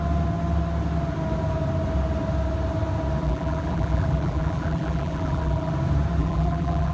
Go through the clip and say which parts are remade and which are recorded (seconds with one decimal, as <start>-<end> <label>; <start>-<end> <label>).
0.0-3.2 recorded; 3.2-5.7 remade; 5.7-6.2 recorded; 6.2-6.9 remade